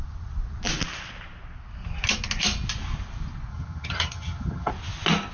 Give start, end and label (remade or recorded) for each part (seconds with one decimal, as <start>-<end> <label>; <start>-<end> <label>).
0.0-3.5 recorded; 3.5-4.7 remade; 4.7-5.3 recorded